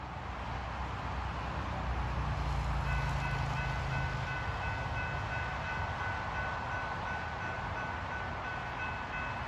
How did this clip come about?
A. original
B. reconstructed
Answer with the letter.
A